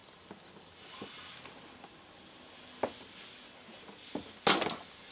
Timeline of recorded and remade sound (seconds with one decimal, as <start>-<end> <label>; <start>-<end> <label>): 0.0-5.1 recorded

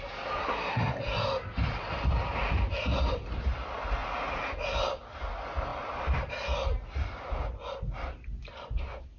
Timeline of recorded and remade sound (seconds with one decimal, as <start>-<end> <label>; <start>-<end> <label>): 0.0-0.4 recorded; 0.4-1.0 remade; 1.0-9.2 recorded

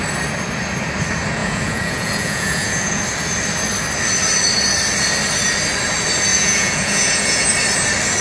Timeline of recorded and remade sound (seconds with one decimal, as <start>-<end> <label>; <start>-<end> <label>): 0.0-1.4 recorded; 1.4-3.0 remade; 3.0-6.3 recorded; 6.3-7.5 remade; 7.5-8.2 recorded

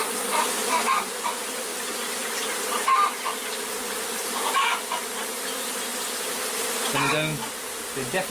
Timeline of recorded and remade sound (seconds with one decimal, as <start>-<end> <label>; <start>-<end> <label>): 0.0-8.3 recorded

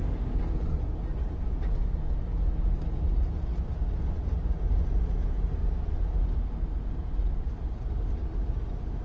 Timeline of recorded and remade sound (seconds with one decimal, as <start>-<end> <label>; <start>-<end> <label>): 0.0-9.0 recorded

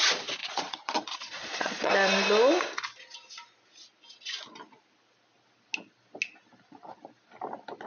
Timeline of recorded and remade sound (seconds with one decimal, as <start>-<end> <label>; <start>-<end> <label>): 0.0-0.4 recorded; 0.4-1.9 remade; 1.9-7.9 recorded